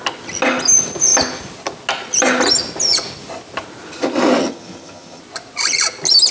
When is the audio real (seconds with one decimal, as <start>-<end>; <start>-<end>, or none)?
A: 0.0-4.4; 5.2-6.3